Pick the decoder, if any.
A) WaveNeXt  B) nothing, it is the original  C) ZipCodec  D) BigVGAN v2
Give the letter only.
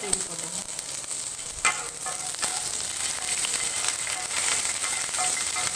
B